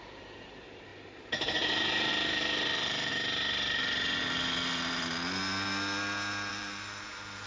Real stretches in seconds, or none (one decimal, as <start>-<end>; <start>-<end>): 3.1-6.5